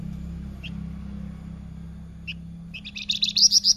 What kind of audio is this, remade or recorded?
recorded